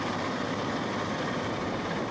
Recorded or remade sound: remade